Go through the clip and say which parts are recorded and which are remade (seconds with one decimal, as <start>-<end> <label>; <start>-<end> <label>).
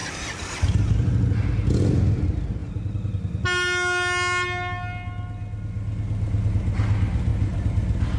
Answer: 0.0-0.9 remade; 0.9-7.3 recorded; 7.3-8.2 remade